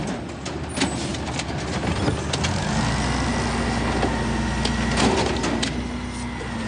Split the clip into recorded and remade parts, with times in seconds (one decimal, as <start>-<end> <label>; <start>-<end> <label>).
0.0-1.1 recorded; 1.1-2.6 remade; 2.6-6.7 recorded